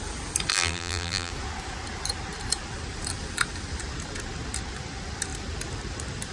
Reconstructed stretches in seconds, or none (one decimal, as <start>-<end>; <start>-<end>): 0.5-1.3

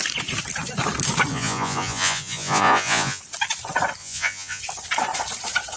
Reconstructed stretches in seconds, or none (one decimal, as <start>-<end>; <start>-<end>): 1.3-3.2; 4.0-4.6

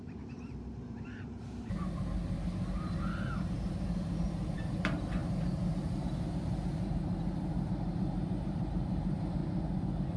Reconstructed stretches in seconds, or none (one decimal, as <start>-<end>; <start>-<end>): 0.0-9.4

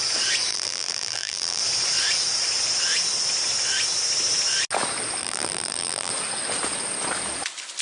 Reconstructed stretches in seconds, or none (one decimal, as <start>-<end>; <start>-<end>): 0.5-1.6; 5.2-6.1

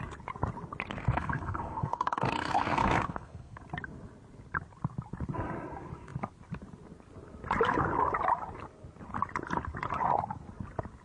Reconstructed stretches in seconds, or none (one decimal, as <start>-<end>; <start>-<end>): 1.0-3.6

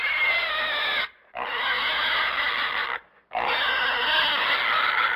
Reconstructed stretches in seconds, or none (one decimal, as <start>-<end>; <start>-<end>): none

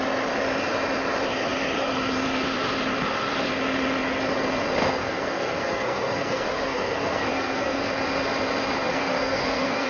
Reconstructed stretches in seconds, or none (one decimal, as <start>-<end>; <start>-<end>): 4.8-7.9; 8.9-9.9

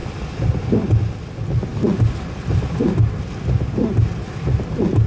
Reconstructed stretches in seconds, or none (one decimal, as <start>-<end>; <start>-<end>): none